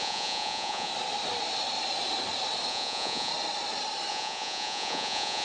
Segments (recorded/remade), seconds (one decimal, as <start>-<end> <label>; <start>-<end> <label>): 0.0-0.9 remade; 0.9-2.7 recorded; 2.7-3.3 remade; 3.3-4.1 recorded; 4.1-5.4 remade